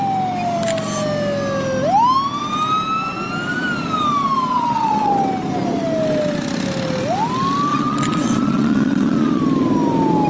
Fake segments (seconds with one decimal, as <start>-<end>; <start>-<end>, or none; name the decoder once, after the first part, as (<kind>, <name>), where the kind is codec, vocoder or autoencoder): 4.5-5.1 (vocoder, WaveNeXt); 7.7-9.4

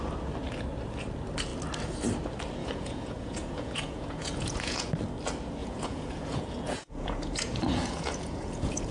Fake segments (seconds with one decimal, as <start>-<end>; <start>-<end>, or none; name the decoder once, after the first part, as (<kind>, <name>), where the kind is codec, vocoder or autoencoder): 2.6-4.9 (vocoder, Vocos); 5.6-8.9

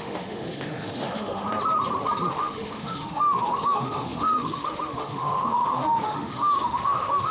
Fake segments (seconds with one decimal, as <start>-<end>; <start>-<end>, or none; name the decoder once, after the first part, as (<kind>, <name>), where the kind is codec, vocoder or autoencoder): 0.0-1.5 (autoencoder, DAC-VAE); 2.3-7.3

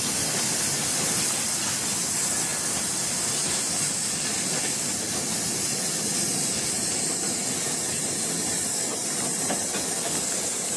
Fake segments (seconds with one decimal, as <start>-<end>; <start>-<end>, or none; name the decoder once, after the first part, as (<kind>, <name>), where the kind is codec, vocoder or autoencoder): none

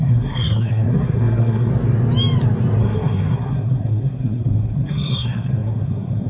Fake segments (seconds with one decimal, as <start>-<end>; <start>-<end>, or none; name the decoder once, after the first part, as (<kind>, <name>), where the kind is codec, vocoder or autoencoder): 0.0-1.7 (codec, SNAC); 2.8-6.3

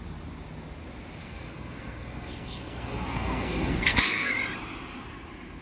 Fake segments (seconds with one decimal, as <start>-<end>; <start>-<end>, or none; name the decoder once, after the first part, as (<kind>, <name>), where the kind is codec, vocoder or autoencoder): 1.2-4.3 (codec, SNAC)

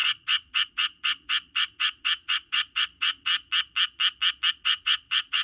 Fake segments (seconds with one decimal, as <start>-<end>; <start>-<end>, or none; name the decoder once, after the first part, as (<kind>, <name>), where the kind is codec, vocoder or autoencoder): 0.0-3.3 (vocoder, Vocos); 4.5-5.4